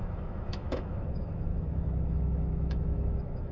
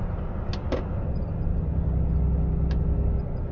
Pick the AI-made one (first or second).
first